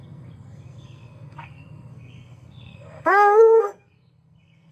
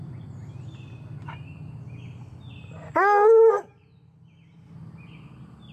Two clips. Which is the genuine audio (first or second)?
second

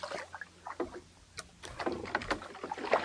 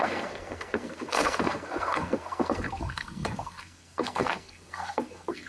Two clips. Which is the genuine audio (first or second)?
first